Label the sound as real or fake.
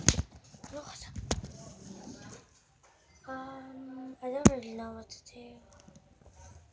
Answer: real